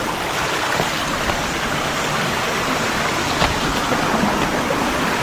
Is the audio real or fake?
real